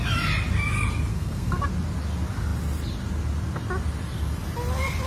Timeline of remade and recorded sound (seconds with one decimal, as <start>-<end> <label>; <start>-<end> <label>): 0.0-1.1 recorded; 1.1-1.7 remade; 1.7-5.1 recorded